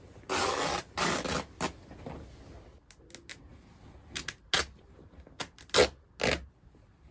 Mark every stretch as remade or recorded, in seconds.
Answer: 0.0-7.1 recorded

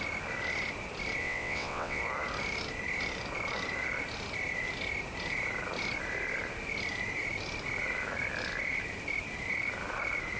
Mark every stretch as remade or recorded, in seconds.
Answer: 0.0-1.2 recorded; 1.2-2.0 remade; 2.0-10.4 recorded

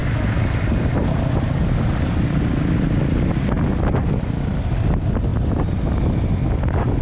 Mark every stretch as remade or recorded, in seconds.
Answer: 0.0-7.0 recorded